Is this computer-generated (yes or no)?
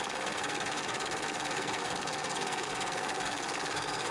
yes